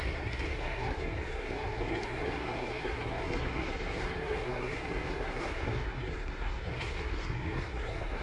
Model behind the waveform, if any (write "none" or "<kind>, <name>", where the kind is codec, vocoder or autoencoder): codec, SNAC